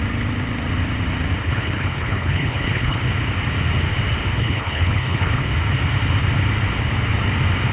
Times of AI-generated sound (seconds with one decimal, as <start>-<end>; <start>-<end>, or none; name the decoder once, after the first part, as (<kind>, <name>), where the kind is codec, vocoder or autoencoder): 1.4-3.0 (codec, HILCodec); 4.4-5.4